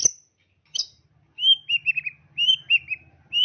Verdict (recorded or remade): recorded